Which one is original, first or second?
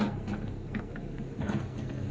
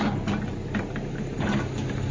second